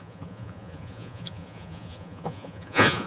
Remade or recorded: remade